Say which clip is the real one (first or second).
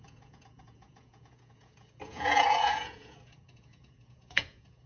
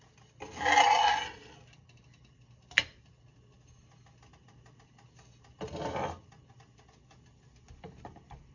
second